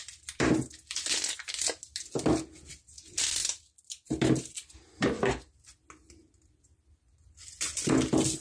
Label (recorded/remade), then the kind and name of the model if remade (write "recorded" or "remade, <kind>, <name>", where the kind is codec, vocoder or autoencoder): recorded